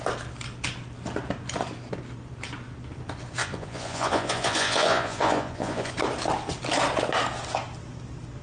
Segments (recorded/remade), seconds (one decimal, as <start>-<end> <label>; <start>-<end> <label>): 0.0-3.4 recorded; 3.4-5.9 remade; 5.9-8.4 recorded